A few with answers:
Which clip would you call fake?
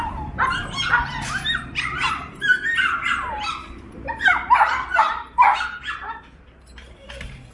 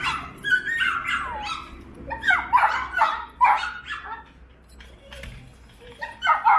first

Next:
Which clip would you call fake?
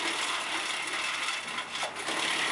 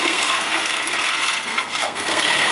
second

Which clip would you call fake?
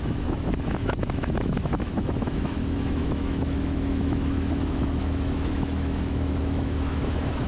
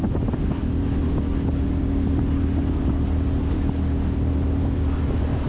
first